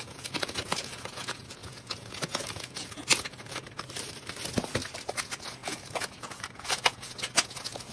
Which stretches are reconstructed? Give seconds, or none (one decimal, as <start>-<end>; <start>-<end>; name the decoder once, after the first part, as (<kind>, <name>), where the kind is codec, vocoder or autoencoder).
0.0-3.6 (vocoder, Vocos); 5.1-7.9